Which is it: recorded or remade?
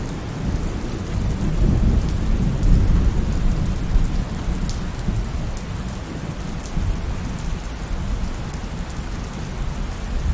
recorded